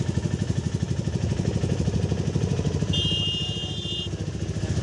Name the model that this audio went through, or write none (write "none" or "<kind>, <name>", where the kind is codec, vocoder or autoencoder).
none